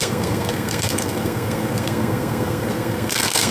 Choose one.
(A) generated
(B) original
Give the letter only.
A